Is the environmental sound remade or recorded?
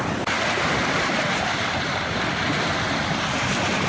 recorded